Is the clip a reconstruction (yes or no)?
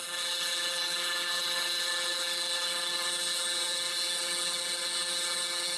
yes